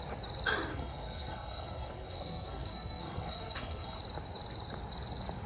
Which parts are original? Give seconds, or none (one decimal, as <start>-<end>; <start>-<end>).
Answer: 0.0-0.7; 4.0-5.5